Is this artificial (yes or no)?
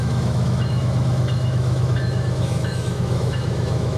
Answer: yes